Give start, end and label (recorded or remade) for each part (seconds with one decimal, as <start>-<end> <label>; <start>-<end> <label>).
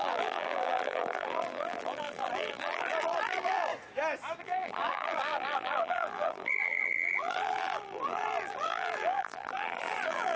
0.0-3.7 remade; 3.7-4.4 recorded; 4.4-10.4 remade